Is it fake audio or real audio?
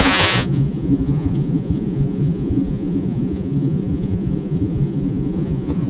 fake